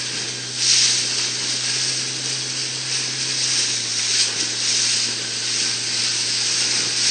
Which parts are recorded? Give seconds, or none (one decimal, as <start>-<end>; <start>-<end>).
0.0-7.1